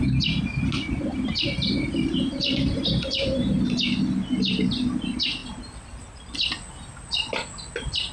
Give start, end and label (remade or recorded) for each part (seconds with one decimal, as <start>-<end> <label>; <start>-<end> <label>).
0.0-1.1 recorded; 1.1-3.6 remade; 3.6-8.1 recorded